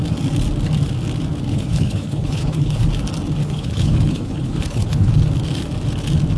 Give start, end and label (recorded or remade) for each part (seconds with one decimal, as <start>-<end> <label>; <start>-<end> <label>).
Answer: 0.0-1.5 recorded; 1.5-2.9 remade; 2.9-3.4 recorded; 3.4-5.1 remade; 5.1-6.4 recorded